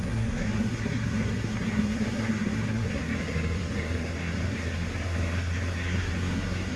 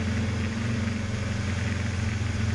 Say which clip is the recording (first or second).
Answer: second